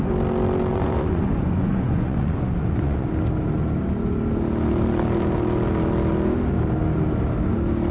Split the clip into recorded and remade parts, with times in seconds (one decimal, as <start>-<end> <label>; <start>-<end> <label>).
0.0-0.7 recorded; 0.7-3.1 remade; 3.1-7.9 recorded